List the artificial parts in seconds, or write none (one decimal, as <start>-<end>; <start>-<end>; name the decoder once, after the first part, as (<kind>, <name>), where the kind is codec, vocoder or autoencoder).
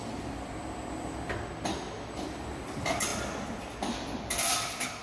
none